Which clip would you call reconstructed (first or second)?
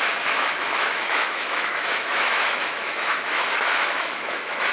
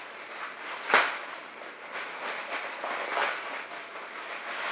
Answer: first